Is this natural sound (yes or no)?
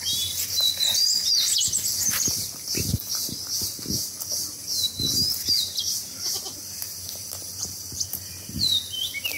yes